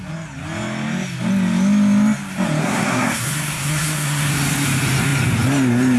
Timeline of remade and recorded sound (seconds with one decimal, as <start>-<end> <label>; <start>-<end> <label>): 0.0-2.6 recorded; 2.6-4.3 remade; 4.3-6.0 recorded